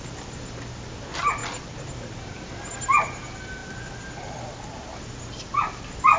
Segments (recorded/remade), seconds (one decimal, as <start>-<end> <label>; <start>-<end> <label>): 0.0-6.2 recorded